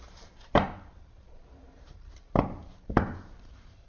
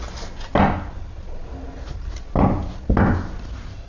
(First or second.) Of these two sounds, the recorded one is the second